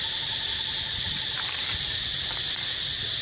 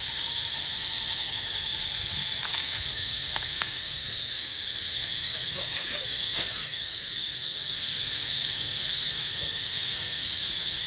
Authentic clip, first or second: first